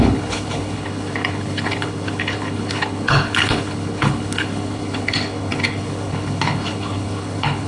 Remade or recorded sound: remade